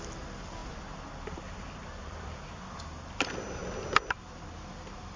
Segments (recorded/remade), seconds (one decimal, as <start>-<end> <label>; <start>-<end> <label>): 0.0-0.6 recorded; 0.6-2.8 remade; 2.8-3.6 recorded; 3.6-4.6 remade; 4.6-5.2 recorded

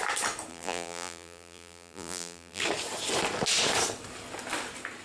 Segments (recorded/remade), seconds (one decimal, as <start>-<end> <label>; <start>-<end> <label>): 0.0-0.5 recorded; 0.5-2.6 remade; 2.6-5.0 recorded

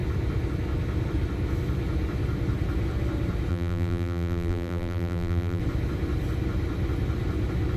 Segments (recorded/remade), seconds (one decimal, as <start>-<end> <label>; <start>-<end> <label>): 0.0-3.5 recorded; 3.5-5.6 remade; 5.6-7.8 recorded

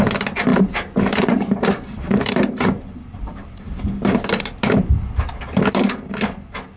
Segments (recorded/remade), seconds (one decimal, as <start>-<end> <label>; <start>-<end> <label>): 0.0-0.5 recorded; 0.5-4.4 remade; 4.4-6.8 recorded